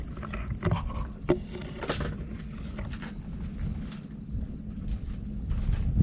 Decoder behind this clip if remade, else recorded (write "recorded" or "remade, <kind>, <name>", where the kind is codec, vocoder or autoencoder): recorded